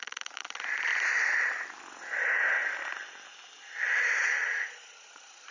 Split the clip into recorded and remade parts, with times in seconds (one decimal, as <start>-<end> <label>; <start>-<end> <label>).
0.0-0.9 remade; 0.9-4.2 recorded; 4.2-5.5 remade